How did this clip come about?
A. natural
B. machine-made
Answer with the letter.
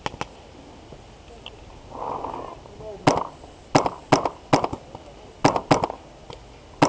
A